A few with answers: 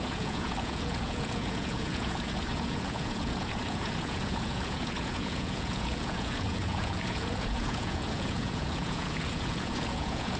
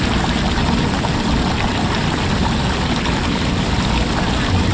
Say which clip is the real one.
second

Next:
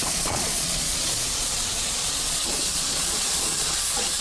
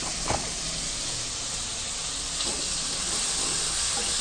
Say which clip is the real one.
second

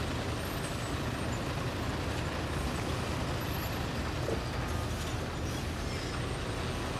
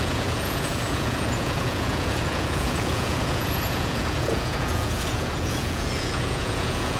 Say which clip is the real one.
first